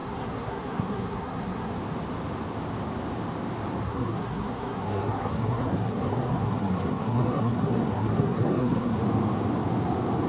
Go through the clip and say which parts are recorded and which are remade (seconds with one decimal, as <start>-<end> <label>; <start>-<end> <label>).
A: 0.0-1.7 remade; 1.7-3.8 recorded; 3.8-9.0 remade; 9.0-10.3 recorded